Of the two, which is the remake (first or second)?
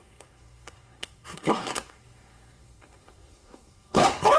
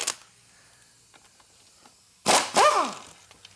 first